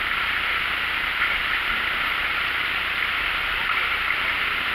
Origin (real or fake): real